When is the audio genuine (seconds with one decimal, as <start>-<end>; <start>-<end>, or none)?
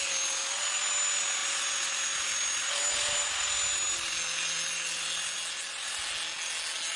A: 0.0-7.0